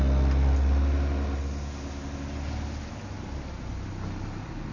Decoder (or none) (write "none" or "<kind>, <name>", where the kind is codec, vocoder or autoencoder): none